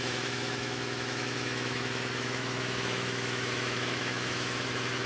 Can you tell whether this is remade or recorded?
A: remade